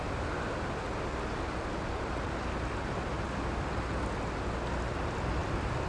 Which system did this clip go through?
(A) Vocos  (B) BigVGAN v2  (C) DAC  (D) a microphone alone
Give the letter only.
D